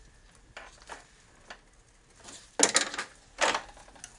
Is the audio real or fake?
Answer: real